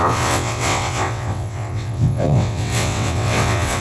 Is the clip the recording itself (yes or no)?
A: no